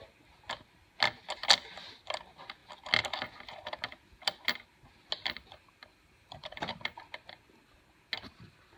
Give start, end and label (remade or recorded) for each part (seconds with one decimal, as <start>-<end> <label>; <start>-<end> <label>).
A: 0.0-5.9 recorded; 5.9-6.8 remade; 6.8-8.8 recorded